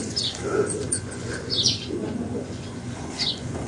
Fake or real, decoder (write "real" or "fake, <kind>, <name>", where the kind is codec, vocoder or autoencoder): fake, vocoder, Vocos